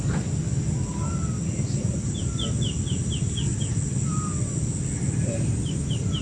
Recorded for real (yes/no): yes